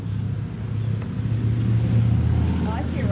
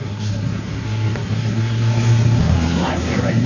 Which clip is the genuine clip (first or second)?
first